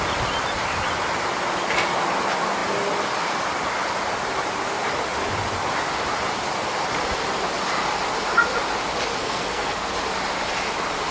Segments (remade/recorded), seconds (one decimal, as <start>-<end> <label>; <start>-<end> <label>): 0.0-9.2 recorded; 9.2-9.9 remade; 9.9-11.1 recorded